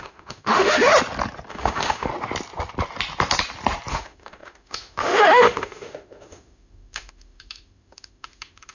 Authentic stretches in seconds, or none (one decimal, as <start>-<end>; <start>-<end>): 0.9-1.5; 2.1-3.9